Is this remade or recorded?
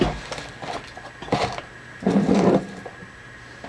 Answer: recorded